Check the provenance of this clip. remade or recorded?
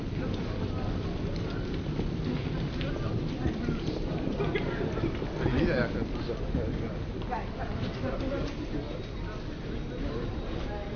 recorded